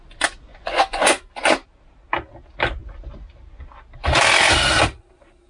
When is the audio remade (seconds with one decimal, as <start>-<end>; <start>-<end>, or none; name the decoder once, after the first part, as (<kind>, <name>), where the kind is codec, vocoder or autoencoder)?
0.5-1.2 (vocoder, Vocos)